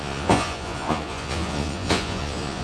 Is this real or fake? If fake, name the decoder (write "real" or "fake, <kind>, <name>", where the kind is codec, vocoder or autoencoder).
fake, vocoder, Vocos